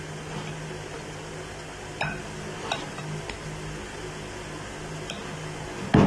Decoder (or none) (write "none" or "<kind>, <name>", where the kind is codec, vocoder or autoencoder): none